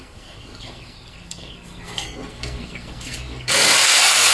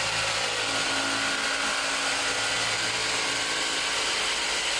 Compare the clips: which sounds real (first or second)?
second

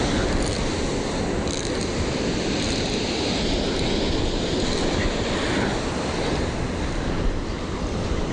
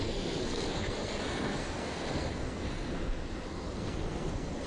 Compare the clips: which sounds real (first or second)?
first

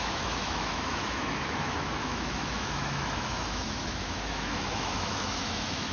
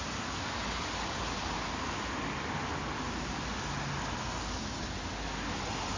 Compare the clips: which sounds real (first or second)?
second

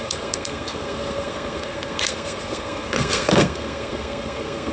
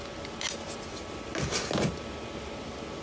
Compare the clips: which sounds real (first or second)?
second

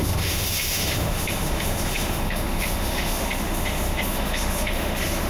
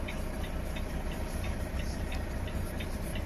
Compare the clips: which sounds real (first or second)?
second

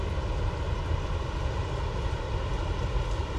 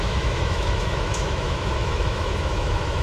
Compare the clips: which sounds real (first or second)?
first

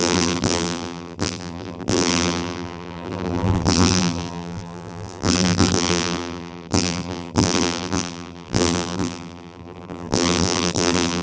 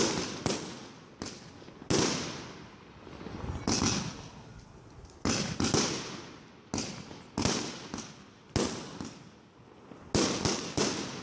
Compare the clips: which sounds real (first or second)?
second